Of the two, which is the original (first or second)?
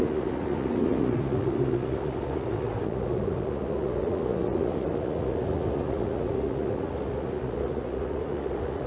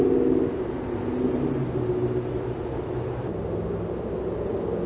second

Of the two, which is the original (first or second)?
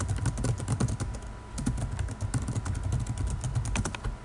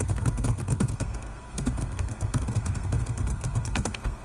first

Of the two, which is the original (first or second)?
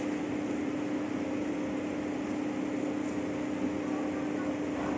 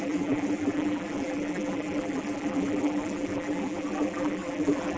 first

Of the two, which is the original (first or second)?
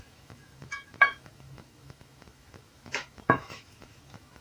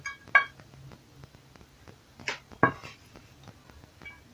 second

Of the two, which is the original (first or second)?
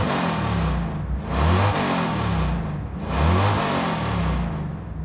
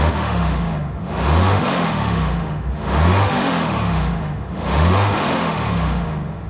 first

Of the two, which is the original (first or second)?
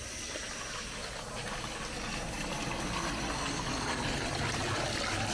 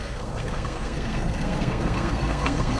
first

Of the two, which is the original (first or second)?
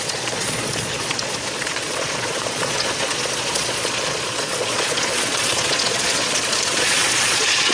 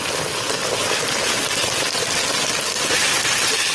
second